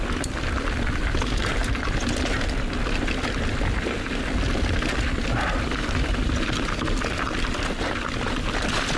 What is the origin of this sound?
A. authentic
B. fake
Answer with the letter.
A